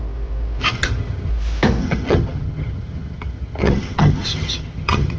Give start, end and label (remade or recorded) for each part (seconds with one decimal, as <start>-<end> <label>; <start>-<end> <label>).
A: 0.0-0.6 recorded; 0.6-1.3 remade; 1.3-1.8 recorded; 1.8-5.2 remade